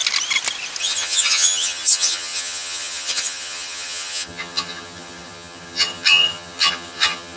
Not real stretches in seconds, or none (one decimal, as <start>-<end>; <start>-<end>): 0.8-7.4